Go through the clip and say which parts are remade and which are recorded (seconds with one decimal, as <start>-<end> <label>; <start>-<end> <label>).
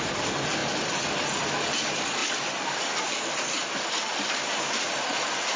0.0-5.6 recorded